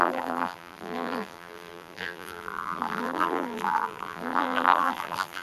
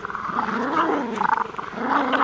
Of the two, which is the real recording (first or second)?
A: second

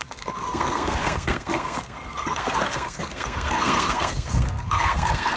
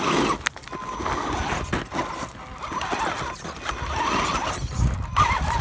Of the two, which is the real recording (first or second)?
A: second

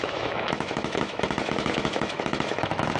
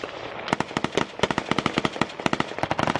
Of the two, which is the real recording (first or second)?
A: second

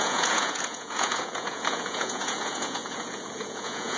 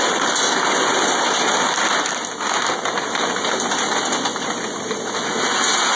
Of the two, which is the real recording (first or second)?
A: second